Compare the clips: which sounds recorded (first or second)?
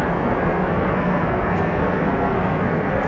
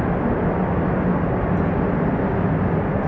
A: second